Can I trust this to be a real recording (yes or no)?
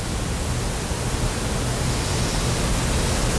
yes